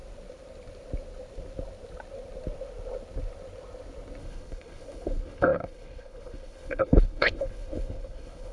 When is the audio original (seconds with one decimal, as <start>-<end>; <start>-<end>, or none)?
0.0-4.2